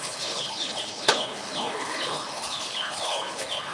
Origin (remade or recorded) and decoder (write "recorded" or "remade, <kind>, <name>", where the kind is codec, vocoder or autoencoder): remade, codec, HILCodec